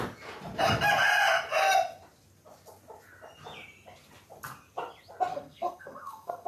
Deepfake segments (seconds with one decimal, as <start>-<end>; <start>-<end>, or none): 5.3-6.5

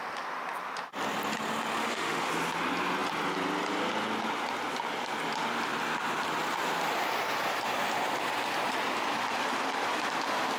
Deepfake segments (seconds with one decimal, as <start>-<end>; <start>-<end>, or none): 1.8-2.3

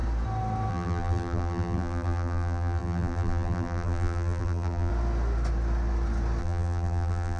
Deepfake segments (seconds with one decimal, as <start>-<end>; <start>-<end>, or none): 0.7-4.9; 6.4-7.4

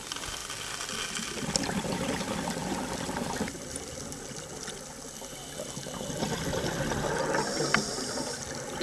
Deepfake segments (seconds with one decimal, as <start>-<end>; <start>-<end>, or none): none

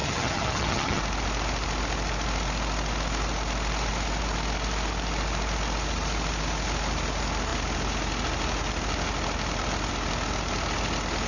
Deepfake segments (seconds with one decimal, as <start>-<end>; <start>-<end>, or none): 0.0-1.0